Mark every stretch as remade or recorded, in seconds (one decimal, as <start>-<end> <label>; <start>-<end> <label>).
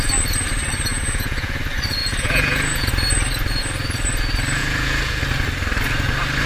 0.0-0.9 recorded; 0.9-1.6 remade; 1.6-2.0 recorded; 2.0-2.9 remade; 2.9-4.6 recorded; 4.6-5.2 remade; 5.2-6.5 recorded